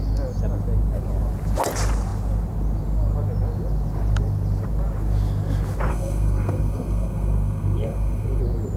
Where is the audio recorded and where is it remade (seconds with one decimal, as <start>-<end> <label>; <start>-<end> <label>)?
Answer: 0.0-5.9 recorded; 5.9-8.4 remade; 8.4-8.8 recorded